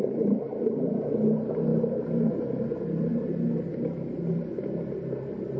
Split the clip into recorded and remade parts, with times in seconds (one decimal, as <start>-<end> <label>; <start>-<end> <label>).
0.0-5.6 recorded